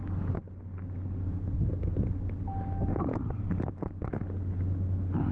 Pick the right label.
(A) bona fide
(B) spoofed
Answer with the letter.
A